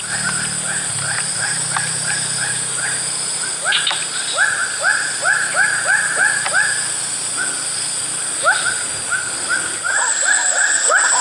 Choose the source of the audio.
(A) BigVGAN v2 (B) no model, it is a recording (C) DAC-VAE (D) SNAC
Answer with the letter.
B